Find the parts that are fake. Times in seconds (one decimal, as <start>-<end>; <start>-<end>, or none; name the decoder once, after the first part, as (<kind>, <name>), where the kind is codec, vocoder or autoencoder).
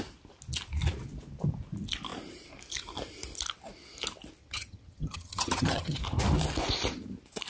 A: 4.4-6.0 (vocoder, HiFi-GAN)